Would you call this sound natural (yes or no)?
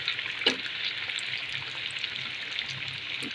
yes